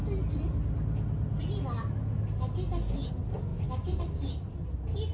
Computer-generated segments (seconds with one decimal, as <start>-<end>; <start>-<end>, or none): 3.5-4.0